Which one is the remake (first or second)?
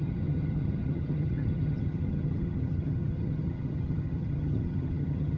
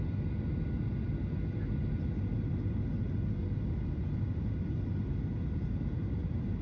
first